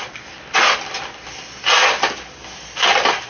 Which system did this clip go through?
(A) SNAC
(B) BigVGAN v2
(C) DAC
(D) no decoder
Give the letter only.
D